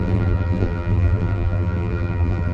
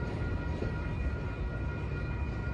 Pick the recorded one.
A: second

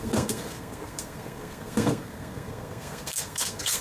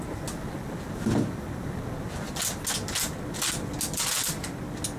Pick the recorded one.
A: second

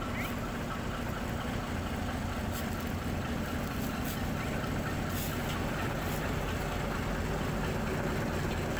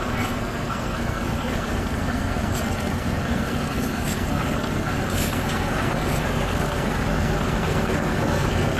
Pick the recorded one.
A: first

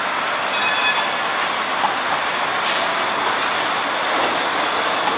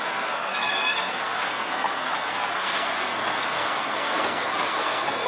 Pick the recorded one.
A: first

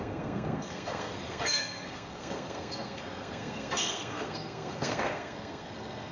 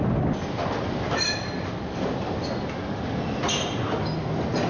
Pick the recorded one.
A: second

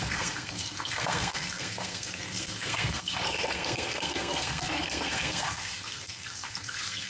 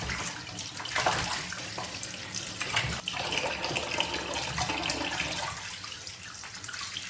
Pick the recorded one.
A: second